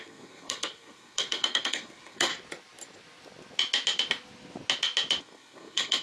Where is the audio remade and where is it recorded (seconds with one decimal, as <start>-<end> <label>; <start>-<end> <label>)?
0.0-2.3 remade; 2.3-5.2 recorded; 5.2-6.0 remade